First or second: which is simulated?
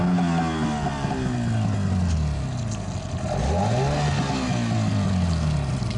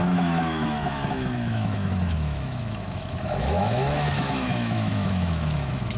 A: second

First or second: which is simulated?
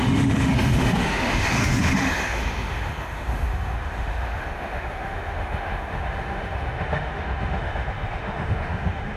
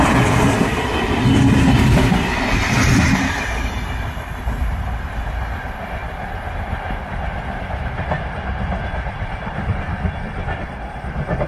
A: first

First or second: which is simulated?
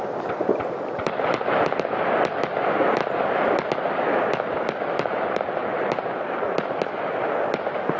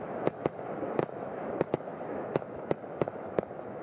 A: second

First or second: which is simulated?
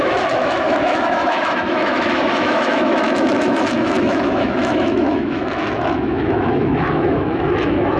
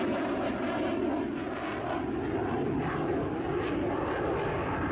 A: first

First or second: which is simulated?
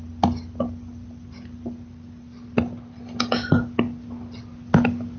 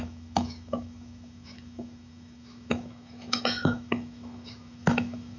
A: second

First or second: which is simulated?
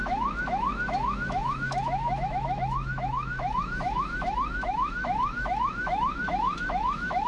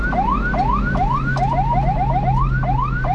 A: first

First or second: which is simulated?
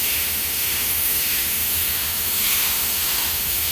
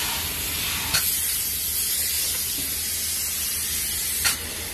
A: first